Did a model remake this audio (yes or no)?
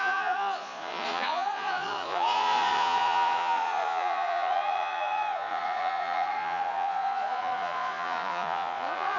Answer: yes